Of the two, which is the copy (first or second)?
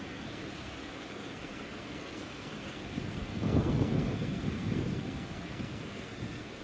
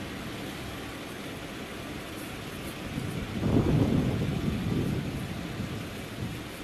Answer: first